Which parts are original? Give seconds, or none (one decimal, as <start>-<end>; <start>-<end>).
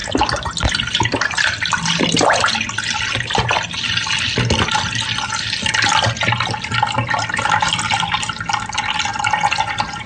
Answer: 0.0-10.1